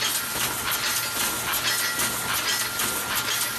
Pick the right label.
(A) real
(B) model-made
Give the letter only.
A